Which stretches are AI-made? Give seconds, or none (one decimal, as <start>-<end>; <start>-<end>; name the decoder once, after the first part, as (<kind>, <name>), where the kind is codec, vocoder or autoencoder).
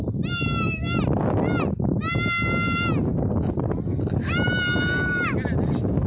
none